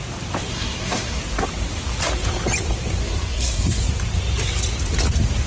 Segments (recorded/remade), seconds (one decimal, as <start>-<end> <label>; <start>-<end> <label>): 0.0-0.5 recorded; 0.5-1.2 remade; 1.2-3.0 recorded; 3.0-3.8 remade; 3.8-5.5 recorded